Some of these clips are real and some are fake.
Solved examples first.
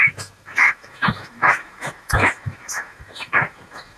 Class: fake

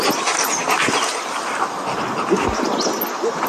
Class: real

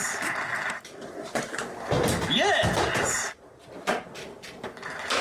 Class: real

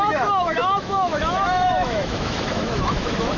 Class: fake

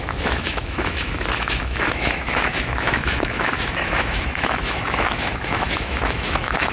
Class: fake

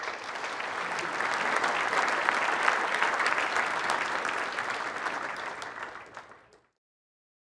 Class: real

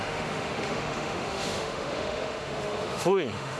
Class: fake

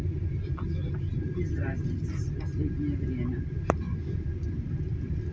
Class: real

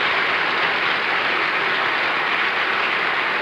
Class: real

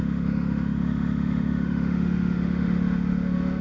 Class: fake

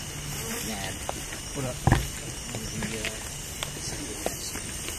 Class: real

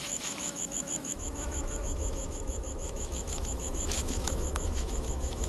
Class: fake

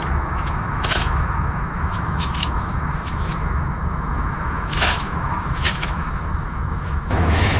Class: fake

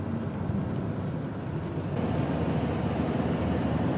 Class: real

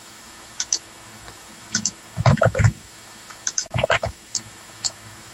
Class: fake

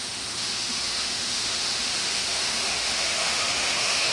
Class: fake